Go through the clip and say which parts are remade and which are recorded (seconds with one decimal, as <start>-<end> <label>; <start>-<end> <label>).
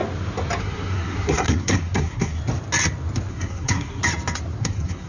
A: 0.0-0.6 recorded; 0.6-2.4 remade; 2.4-3.3 recorded; 3.3-4.0 remade; 4.0-4.6 recorded; 4.6-5.1 remade